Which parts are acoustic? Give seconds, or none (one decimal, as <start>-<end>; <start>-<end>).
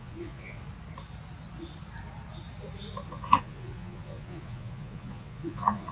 0.6-3.1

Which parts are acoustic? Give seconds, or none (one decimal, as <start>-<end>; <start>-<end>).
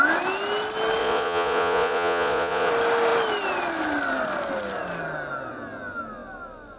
0.0-1.0; 2.7-6.8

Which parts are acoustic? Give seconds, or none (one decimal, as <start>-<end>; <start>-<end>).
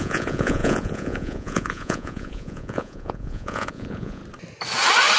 4.2-5.2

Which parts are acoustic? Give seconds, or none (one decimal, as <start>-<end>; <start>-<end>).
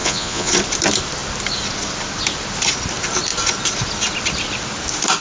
0.5-5.2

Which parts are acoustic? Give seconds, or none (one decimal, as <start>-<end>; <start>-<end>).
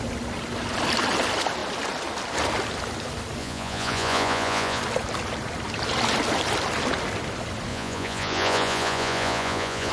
0.0-3.4; 4.8-7.7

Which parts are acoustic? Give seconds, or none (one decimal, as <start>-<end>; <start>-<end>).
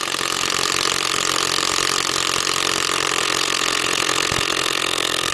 0.0-3.2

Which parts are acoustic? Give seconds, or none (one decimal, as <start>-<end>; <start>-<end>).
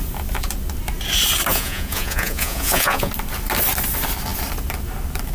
0.0-1.5; 3.1-5.3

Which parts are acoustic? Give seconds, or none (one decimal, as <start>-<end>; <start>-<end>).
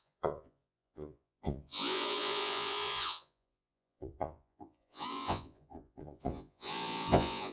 none